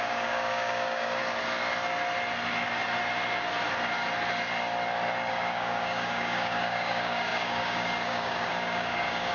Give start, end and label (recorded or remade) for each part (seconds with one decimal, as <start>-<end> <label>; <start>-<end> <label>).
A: 0.0-1.2 remade; 1.2-5.3 recorded; 5.3-9.3 remade